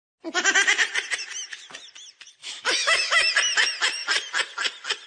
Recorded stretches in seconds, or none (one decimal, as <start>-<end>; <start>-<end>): 0.0-2.4; 3.3-5.1